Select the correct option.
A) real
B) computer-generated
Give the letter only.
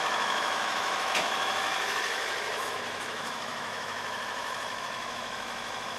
B